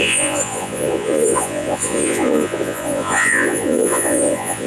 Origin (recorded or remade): remade